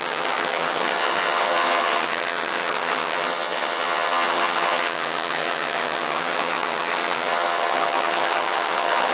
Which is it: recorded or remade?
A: remade